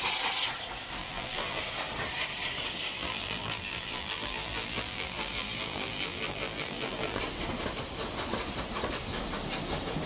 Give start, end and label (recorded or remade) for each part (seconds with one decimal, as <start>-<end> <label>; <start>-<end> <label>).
0.0-1.0 recorded; 1.0-1.6 remade; 1.6-3.0 recorded; 3.0-7.2 remade; 7.2-10.1 recorded